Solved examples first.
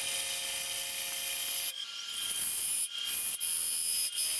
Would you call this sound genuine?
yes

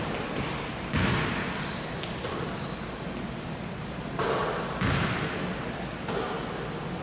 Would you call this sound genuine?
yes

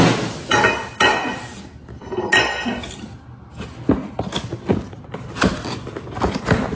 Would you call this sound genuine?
yes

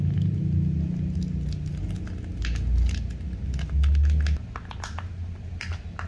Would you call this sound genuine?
yes